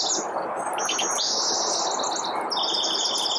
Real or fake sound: real